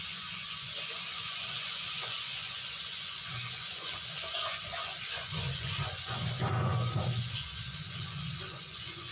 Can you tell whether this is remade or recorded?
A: remade